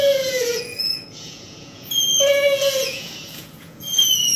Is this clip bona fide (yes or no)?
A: no